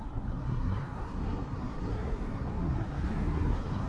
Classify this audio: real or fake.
fake